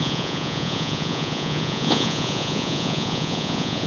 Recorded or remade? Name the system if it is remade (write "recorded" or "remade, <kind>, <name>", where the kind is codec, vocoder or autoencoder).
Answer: remade, vocoder, Vocos